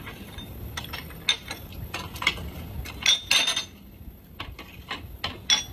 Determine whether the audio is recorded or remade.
recorded